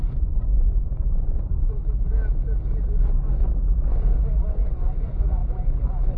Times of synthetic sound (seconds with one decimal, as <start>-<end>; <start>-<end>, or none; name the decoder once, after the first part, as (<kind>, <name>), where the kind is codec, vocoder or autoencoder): 0.0-1.8 (vocoder, Vocos); 4.5-5.4